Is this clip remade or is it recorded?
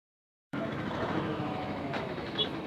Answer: remade